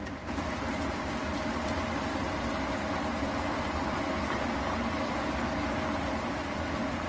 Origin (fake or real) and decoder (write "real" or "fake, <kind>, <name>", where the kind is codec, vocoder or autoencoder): real